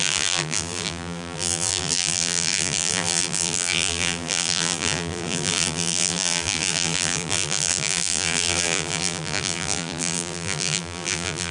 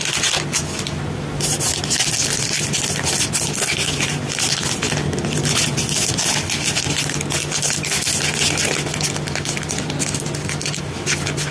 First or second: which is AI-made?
first